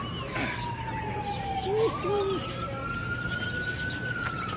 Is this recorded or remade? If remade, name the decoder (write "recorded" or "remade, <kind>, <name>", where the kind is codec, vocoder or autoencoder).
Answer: recorded